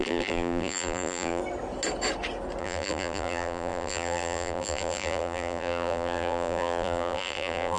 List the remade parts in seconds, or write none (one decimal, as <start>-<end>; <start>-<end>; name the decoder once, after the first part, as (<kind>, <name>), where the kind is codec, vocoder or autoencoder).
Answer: 0.0-1.4 (vocoder, BigVGAN v2); 2.6-7.8